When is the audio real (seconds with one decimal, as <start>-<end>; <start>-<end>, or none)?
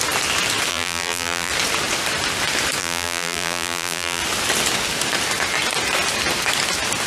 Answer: 0.0-0.7; 1.5-2.8; 4.2-7.1